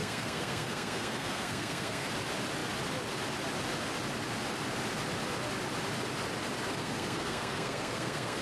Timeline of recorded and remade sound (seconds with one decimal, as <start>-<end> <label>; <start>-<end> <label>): 0.0-2.1 remade; 2.1-6.8 recorded; 6.8-8.4 remade